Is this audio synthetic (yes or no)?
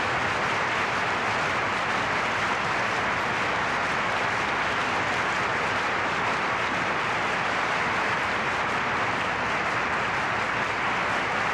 no